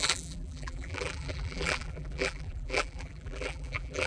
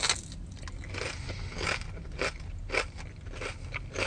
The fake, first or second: first